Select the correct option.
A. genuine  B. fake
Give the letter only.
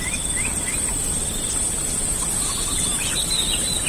A